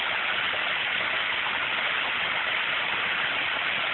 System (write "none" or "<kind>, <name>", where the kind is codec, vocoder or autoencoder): none